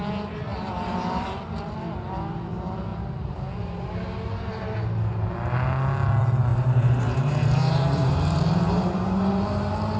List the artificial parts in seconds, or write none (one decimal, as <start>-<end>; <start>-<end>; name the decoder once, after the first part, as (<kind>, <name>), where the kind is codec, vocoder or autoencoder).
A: 0.5-1.3 (vocoder, BigVGAN v2); 6.5-9.4